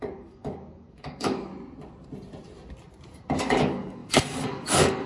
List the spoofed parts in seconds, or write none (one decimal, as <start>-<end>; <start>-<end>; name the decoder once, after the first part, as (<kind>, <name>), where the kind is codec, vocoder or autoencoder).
0.0-1.5 (codec, DAC); 3.4-5.1